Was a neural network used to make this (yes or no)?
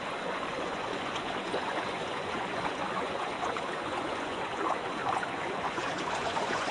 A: yes